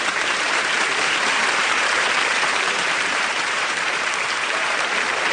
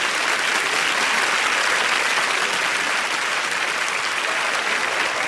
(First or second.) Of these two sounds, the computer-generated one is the first